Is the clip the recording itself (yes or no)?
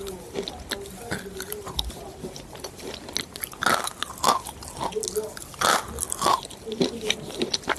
yes